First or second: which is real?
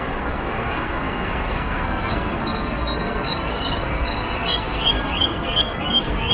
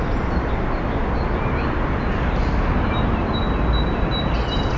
second